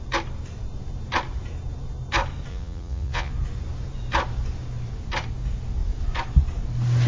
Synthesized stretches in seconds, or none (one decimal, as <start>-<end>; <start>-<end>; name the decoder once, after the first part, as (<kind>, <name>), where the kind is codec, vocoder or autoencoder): 2.5-3.3 (vocoder, Vocos)